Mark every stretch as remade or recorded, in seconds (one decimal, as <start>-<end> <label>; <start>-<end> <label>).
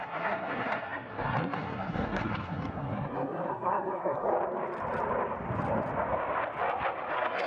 0.0-4.3 remade; 4.3-7.1 recorded; 7.1-7.5 remade